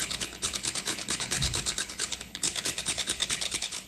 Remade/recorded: remade